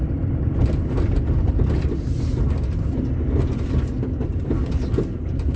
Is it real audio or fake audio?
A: real